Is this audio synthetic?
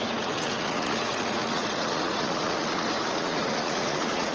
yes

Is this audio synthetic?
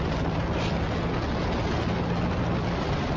no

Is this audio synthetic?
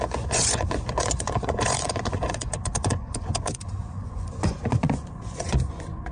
yes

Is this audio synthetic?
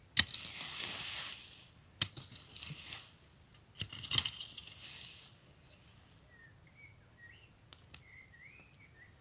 no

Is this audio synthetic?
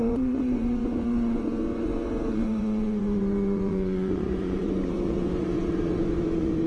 yes